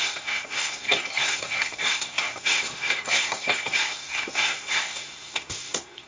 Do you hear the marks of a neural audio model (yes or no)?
yes